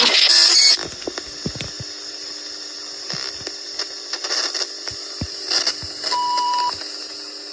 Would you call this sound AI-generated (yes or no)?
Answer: no